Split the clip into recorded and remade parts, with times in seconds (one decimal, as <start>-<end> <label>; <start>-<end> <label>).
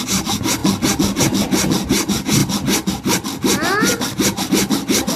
0.0-5.2 recorded